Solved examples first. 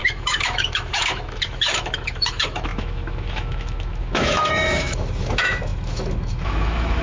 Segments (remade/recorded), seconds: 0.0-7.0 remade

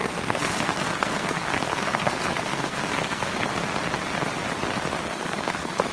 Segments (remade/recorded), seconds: 0.0-3.5 remade; 3.5-5.0 recorded; 5.0-5.9 remade

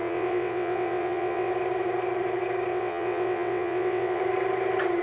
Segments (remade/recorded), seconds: 0.0-1.5 remade; 1.5-2.7 recorded; 2.7-4.2 remade; 4.2-5.0 recorded

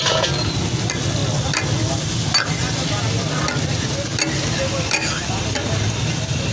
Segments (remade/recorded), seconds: 0.0-6.5 recorded